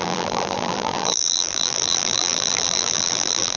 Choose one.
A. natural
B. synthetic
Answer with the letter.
B